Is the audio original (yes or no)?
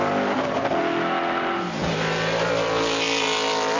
yes